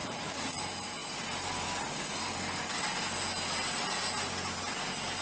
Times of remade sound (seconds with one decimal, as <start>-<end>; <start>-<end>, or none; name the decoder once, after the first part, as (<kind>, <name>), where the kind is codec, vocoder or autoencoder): 0.0-0.6 (vocoder, Vocos)